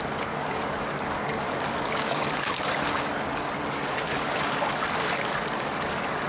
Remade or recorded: remade